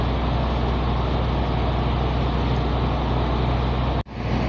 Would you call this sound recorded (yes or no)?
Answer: yes